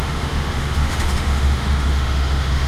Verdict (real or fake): fake